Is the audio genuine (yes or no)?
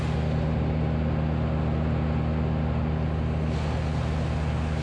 yes